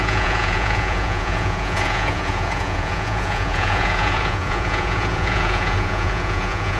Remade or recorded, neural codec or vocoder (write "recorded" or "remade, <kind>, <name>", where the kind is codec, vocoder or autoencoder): remade, vocoder, Vocos